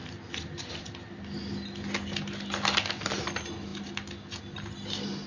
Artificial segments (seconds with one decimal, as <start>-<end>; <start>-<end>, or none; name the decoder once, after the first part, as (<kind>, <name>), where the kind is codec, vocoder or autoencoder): none